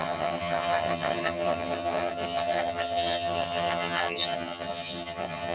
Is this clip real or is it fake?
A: fake